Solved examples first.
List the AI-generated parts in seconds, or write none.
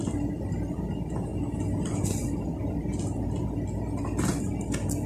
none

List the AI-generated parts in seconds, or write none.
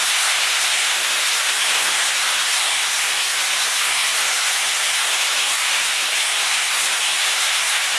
0.0-8.0 (codec, SNAC)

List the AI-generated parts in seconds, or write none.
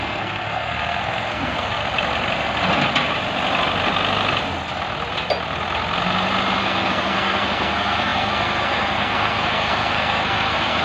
0.0-1.8 (codec, SNAC); 6.6-10.8